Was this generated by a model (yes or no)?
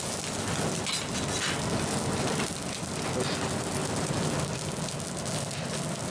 no